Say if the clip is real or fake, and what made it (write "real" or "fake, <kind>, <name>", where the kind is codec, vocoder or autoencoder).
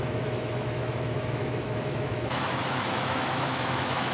fake, autoencoder, DAC-VAE